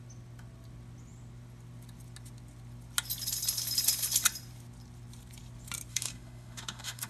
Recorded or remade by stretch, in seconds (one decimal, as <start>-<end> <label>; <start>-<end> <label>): 0.0-5.9 recorded; 5.9-7.1 remade